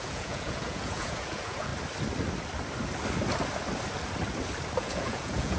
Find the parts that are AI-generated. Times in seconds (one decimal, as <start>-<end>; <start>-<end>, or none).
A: 0.0-1.7; 4.8-5.6